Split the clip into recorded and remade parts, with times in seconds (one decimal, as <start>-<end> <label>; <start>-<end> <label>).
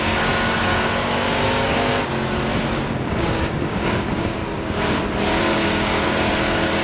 0.0-1.9 remade; 1.9-3.0 recorded; 3.0-4.4 remade; 4.4-5.4 recorded; 5.4-6.8 remade